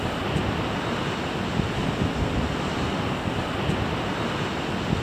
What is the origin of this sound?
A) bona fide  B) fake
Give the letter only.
A